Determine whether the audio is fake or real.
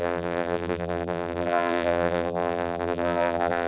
fake